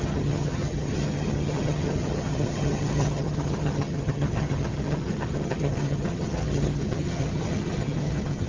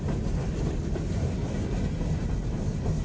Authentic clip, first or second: second